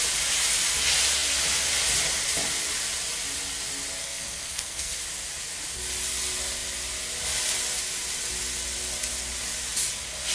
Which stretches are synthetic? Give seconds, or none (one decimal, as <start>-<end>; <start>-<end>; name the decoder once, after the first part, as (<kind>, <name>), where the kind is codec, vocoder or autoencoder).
4.0-5.0 (codec, SNAC)